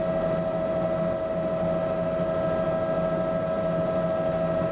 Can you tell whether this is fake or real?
real